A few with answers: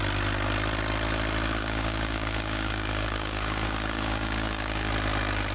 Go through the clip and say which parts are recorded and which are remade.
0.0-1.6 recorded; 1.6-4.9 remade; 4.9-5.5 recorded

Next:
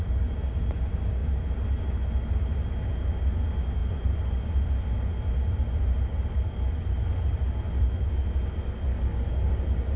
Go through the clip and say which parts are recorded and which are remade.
0.0-8.9 recorded; 8.9-9.6 remade; 9.6-10.0 recorded

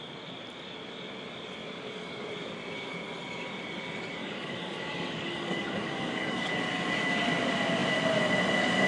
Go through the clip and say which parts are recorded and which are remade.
0.0-1.6 recorded; 1.6-2.3 remade; 2.3-4.2 recorded; 4.2-6.5 remade; 6.5-8.9 recorded

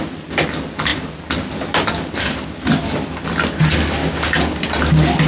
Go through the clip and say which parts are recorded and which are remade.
0.0-4.0 recorded; 4.0-4.7 remade; 4.7-5.3 recorded

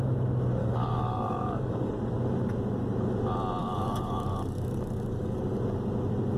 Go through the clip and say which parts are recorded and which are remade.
0.0-0.6 recorded; 0.6-1.9 remade; 1.9-3.6 recorded; 3.6-5.4 remade; 5.4-6.4 recorded

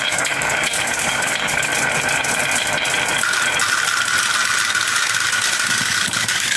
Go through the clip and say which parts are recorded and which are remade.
0.0-1.7 remade; 1.7-5.7 recorded; 5.7-6.6 remade